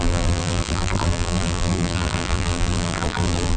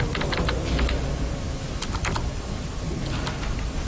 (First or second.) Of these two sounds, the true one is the second